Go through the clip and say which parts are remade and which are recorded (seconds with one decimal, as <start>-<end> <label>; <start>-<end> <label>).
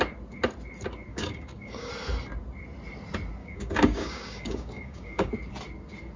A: 0.0-1.1 recorded; 1.1-1.9 remade; 1.9-3.4 recorded; 3.4-5.3 remade; 5.3-6.2 recorded